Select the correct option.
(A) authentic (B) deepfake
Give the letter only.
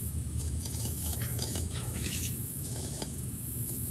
B